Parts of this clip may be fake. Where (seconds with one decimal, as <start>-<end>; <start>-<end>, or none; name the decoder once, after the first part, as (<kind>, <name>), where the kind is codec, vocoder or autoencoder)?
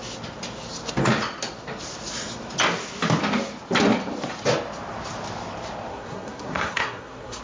5.9-7.4 (codec, SNAC)